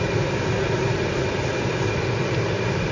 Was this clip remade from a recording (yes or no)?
no